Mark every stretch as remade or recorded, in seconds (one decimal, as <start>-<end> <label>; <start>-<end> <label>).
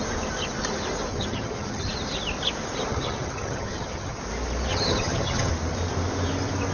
0.0-1.1 recorded; 1.1-1.9 remade; 1.9-2.9 recorded; 2.9-4.2 remade; 4.2-4.7 recorded; 4.7-5.5 remade; 5.5-6.7 recorded